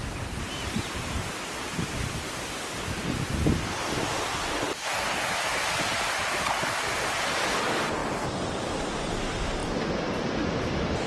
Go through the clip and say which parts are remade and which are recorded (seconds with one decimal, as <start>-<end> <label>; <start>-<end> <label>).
0.0-11.1 recorded